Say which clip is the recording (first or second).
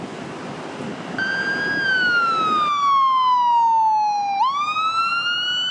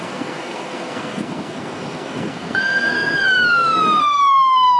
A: first